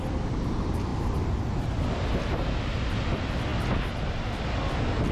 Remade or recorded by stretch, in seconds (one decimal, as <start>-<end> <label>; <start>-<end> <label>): 0.0-5.1 recorded